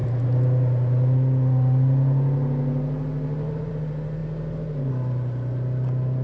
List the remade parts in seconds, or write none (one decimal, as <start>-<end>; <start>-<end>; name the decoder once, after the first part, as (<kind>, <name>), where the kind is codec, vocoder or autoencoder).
none